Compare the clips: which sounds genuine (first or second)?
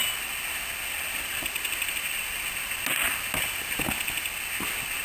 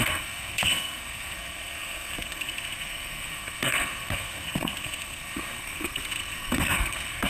first